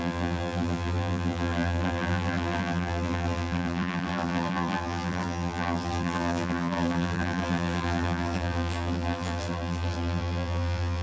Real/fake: fake